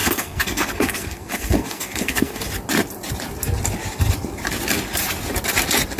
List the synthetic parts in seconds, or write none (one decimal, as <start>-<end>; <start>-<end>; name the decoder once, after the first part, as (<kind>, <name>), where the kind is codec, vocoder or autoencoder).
0.0-2.4 (codec, SNAC)